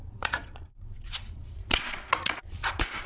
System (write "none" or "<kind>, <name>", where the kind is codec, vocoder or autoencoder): vocoder, Vocos